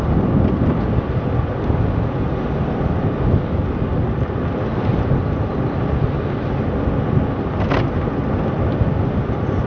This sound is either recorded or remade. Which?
recorded